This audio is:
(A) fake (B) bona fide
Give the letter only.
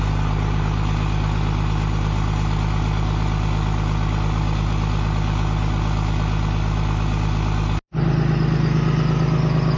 B